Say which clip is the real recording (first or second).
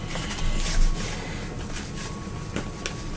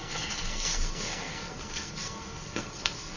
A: first